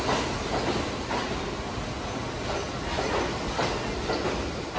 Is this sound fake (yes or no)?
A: no